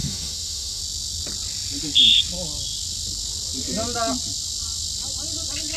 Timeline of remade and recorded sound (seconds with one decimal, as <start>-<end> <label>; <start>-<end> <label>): 0.0-0.8 remade; 0.8-5.8 recorded